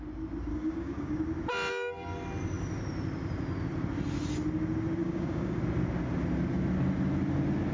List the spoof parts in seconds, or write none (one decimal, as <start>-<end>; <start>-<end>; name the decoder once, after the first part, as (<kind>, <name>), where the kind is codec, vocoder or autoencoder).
0.5-1.2 (codec, DAC); 5.0-5.6